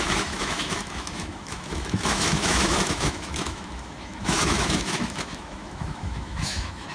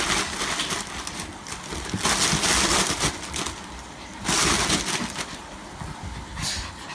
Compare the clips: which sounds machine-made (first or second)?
first